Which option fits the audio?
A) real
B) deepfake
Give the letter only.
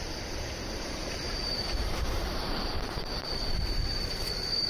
B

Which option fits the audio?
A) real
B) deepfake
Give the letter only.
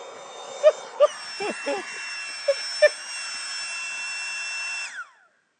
A